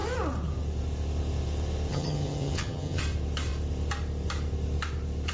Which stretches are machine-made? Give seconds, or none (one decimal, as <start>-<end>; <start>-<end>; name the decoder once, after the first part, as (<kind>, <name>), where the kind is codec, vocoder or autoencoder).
1.9-3.0 (vocoder, HiFi-GAN)